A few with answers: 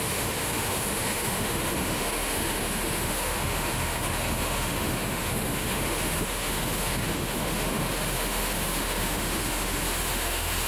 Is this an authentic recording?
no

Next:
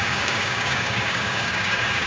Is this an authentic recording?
no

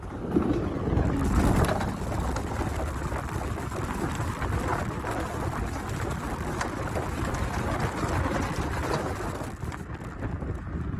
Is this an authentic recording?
yes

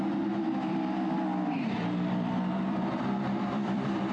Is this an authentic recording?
no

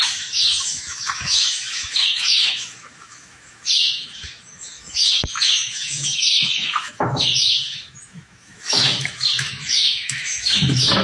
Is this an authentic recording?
no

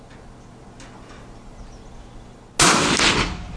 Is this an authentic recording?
yes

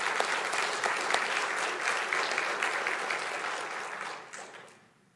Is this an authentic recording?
yes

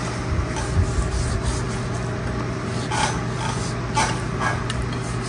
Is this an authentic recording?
yes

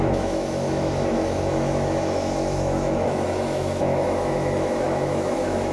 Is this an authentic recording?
no